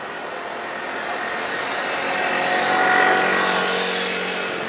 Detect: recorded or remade recorded